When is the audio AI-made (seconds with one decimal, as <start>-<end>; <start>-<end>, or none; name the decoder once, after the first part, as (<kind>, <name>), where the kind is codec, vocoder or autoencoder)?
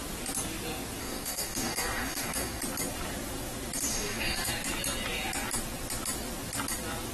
1.0-2.6 (codec, DAC); 3.9-4.5